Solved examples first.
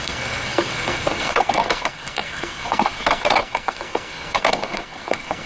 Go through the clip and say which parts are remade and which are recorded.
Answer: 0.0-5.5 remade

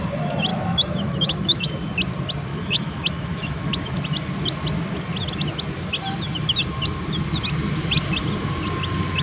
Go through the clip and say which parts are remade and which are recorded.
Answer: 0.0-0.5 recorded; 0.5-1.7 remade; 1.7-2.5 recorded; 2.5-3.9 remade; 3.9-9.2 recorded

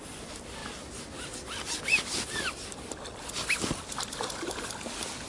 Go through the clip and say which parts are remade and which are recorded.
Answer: 0.0-5.3 recorded

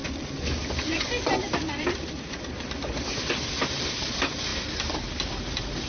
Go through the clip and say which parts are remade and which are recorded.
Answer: 0.0-4.5 remade; 4.5-5.3 recorded; 5.3-5.9 remade

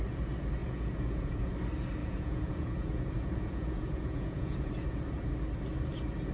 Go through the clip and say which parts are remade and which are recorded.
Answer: 0.0-0.6 recorded; 0.6-1.5 remade; 1.5-2.0 recorded; 2.0-4.7 remade; 4.7-6.3 recorded

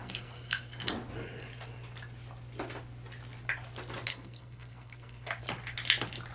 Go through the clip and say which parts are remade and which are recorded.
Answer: 0.0-0.9 remade; 0.9-4.1 recorded; 4.1-5.4 remade; 5.4-6.3 recorded

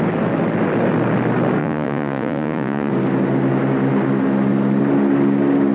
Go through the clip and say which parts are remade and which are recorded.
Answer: 0.0-1.6 recorded; 1.6-2.9 remade; 2.9-5.7 recorded

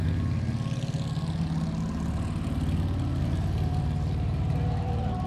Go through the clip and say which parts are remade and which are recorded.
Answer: 0.0-3.2 recorded; 3.2-5.3 remade